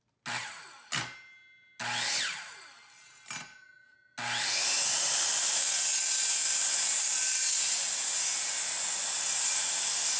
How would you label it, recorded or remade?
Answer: recorded